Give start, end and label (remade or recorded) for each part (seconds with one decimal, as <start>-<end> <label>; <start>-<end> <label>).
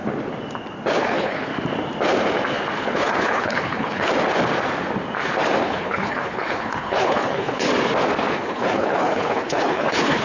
0.0-1.0 recorded; 1.0-1.5 remade; 1.5-2.8 recorded; 2.8-4.1 remade; 4.1-5.6 recorded; 5.6-7.7 remade; 7.7-8.3 recorded; 8.3-10.2 remade